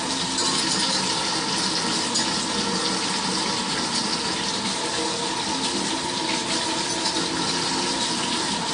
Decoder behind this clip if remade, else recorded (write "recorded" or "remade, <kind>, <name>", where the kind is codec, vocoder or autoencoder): recorded